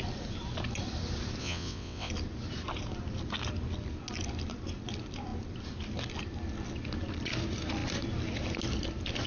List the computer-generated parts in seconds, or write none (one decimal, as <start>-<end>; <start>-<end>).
1.4-2.1